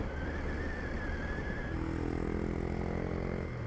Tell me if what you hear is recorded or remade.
recorded